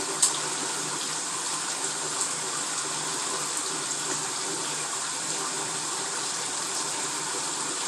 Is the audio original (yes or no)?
no